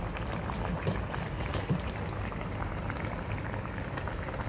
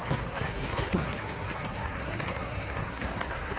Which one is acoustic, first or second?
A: first